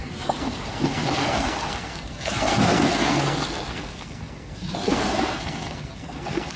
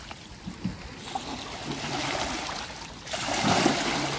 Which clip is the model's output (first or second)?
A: first